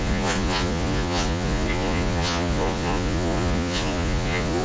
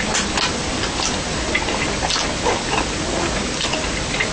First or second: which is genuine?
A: second